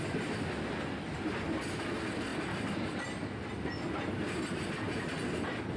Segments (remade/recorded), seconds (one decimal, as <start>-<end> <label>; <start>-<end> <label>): 0.0-5.8 recorded